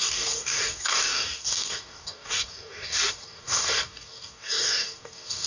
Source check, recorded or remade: remade